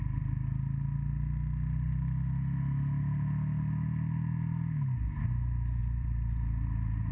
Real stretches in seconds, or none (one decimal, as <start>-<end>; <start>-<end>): 0.0-5.8